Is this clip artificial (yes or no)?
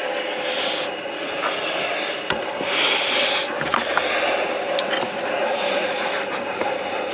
no